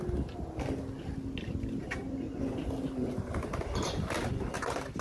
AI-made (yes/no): no